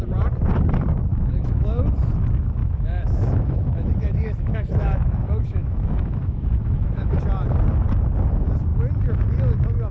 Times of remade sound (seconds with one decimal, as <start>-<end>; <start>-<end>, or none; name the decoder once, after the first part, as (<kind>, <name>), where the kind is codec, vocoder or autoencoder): 1.1-1.8 (autoencoder, DAC-VAE); 2.6-7.2